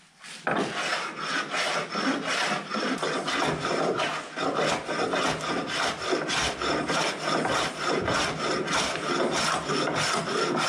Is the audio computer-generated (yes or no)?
no